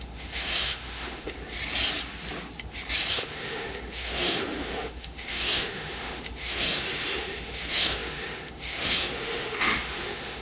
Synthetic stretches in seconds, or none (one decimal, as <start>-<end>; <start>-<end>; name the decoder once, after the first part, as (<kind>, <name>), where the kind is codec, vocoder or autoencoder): 0.0-1.4 (autoencoder, DAC-VAE); 3.1-10.4